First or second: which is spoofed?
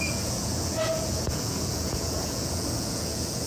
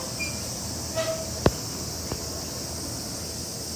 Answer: first